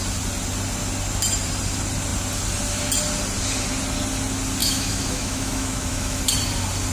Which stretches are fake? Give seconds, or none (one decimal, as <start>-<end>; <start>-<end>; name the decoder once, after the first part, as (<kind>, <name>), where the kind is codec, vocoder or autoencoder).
4.6-6.2 (autoencoder, DAC-VAE)